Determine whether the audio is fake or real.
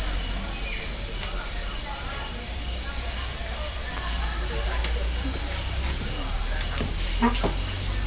real